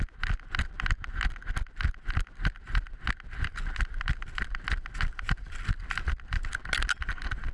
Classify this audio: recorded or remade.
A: recorded